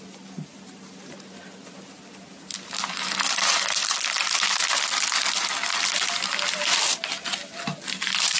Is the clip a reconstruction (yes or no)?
no